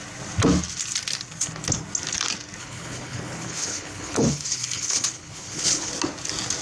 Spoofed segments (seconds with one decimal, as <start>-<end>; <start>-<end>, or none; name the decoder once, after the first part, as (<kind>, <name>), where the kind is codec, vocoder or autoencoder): 2.6-5.9 (codec, HILCodec)